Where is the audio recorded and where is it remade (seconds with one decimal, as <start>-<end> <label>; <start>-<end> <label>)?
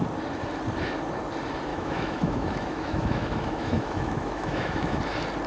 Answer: 0.0-1.7 recorded; 1.7-5.0 remade; 5.0-5.5 recorded